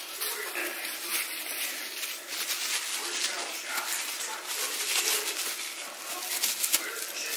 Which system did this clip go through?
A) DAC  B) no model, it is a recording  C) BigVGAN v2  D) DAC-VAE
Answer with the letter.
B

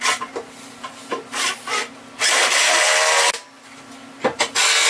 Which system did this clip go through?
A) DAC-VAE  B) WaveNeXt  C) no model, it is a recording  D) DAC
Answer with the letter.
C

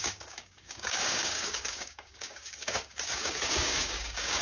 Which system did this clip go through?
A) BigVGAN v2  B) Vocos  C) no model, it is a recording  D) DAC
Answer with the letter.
D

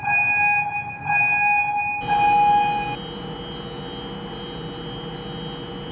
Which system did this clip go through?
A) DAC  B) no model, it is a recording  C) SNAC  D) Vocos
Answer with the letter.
B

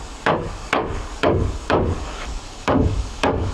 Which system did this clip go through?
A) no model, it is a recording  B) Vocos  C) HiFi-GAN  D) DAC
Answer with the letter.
D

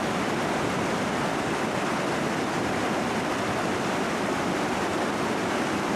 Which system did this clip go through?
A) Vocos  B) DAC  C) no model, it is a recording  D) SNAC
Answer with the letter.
C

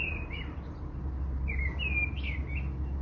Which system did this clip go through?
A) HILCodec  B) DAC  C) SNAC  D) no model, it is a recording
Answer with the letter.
D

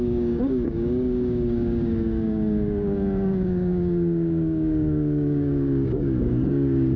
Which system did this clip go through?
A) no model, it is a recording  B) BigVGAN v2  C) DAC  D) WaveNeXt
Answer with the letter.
C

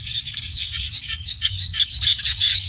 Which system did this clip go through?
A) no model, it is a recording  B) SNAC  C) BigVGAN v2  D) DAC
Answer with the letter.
D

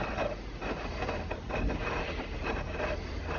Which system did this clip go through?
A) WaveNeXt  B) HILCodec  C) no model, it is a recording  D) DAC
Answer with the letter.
C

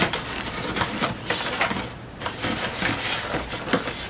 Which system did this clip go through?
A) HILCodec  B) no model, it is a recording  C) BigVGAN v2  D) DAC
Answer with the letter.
B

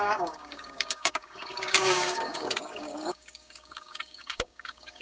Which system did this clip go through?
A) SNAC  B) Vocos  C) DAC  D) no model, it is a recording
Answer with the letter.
C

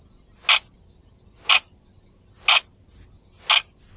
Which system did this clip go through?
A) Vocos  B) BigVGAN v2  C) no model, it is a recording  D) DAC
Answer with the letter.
C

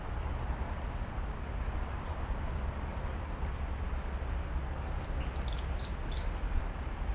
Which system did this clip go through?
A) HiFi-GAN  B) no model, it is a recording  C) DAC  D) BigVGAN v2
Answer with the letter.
B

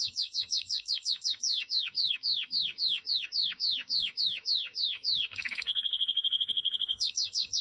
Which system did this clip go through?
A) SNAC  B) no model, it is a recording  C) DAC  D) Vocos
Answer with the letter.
C